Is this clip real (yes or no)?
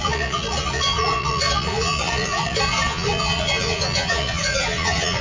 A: no